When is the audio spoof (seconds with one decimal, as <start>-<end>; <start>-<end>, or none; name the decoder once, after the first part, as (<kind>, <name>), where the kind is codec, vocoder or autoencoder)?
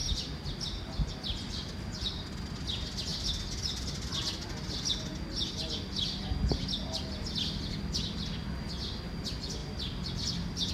none